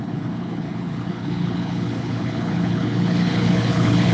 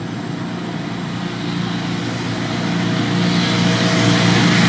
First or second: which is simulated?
first